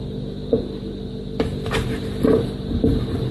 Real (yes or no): yes